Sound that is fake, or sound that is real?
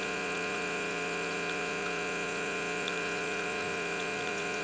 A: fake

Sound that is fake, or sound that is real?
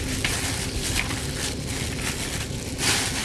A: real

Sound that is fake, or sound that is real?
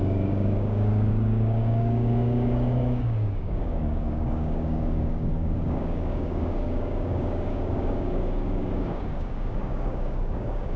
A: fake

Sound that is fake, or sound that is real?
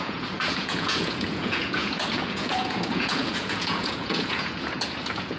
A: fake